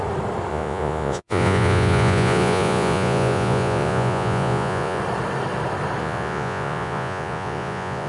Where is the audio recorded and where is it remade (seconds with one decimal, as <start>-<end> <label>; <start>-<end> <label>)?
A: 0.0-0.5 recorded; 0.5-5.0 remade; 5.0-6.0 recorded; 6.0-8.1 remade